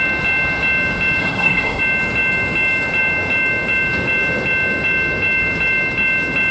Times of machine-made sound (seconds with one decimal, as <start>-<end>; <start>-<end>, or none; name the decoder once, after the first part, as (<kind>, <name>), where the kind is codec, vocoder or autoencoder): 1.2-1.8 (codec, SNAC)